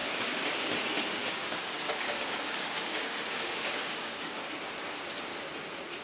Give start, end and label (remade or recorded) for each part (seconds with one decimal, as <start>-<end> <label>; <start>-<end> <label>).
0.0-0.7 remade; 0.7-1.2 recorded; 1.2-4.5 remade; 4.5-6.0 recorded